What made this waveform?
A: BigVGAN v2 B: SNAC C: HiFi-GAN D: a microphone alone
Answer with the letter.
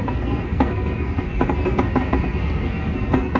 B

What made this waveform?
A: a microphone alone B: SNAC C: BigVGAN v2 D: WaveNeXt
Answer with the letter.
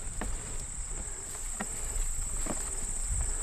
A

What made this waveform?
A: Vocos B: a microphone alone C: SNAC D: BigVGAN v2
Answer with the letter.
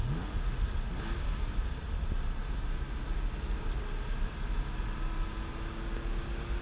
B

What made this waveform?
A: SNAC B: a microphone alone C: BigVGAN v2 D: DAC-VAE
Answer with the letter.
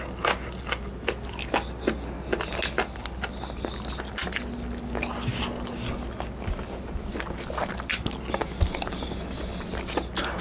B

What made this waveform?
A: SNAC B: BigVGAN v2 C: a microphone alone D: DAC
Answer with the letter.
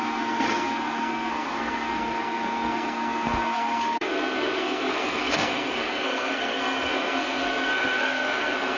A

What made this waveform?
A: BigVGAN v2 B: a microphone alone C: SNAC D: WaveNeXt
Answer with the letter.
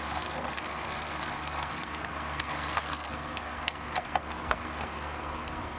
C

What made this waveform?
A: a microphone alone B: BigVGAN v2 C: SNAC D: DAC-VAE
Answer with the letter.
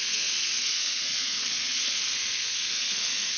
C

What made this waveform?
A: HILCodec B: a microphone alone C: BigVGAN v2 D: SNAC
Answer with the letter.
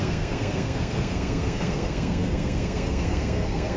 D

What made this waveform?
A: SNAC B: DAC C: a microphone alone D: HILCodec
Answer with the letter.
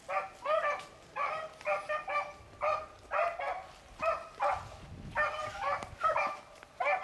C